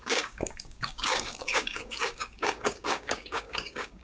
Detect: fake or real fake